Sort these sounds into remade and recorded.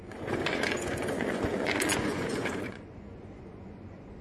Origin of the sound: remade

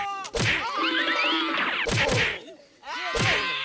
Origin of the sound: recorded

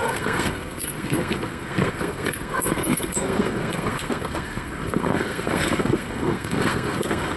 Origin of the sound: remade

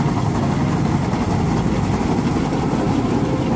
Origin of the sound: recorded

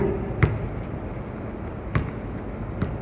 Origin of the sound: recorded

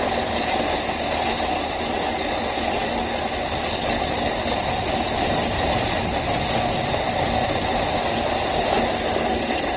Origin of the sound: recorded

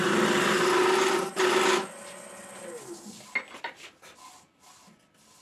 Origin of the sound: recorded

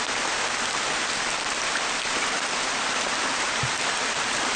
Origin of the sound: recorded